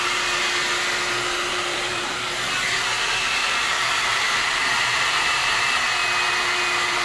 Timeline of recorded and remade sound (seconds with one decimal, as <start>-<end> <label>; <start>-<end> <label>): 0.0-1.5 recorded; 1.5-2.8 remade; 2.8-3.4 recorded; 3.4-5.6 remade; 5.6-7.0 recorded